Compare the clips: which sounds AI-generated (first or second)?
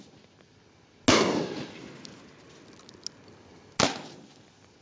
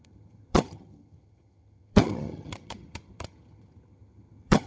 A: second